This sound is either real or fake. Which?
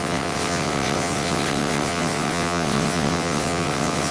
fake